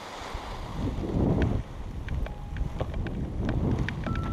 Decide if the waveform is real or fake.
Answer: real